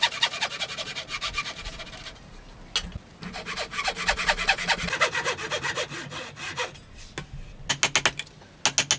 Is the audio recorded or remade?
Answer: recorded